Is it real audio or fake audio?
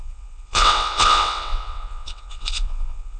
fake